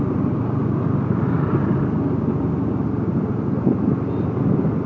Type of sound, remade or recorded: recorded